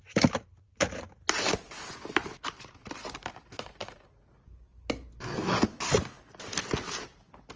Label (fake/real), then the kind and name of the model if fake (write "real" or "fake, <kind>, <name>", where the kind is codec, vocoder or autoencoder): real